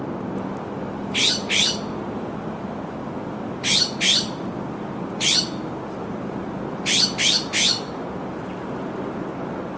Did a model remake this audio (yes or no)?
no